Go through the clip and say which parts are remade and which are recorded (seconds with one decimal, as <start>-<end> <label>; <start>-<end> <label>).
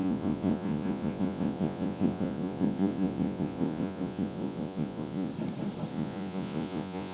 0.0-5.3 remade; 5.3-5.9 recorded; 5.9-7.1 remade